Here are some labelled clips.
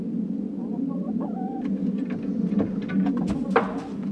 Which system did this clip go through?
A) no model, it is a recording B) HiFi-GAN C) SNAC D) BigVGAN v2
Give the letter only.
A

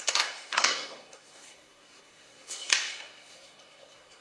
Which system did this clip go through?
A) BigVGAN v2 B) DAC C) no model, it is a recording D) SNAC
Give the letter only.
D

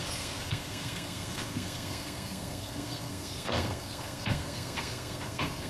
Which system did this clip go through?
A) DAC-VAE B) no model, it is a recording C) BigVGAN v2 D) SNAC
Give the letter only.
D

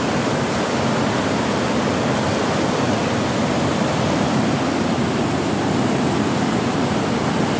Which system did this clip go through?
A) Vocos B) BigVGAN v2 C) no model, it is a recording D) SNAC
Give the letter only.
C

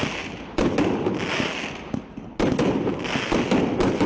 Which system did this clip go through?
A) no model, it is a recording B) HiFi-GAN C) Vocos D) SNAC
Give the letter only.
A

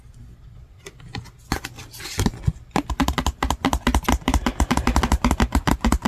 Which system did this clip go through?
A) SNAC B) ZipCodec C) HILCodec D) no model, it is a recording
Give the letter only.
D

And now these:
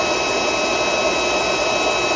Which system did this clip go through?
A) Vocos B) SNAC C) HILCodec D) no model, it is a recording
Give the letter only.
D